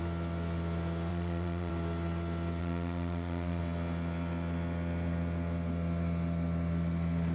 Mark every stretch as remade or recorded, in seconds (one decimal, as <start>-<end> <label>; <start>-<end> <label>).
0.0-1.1 recorded; 1.1-1.7 remade; 1.7-2.6 recorded; 2.6-3.6 remade; 3.6-7.3 recorded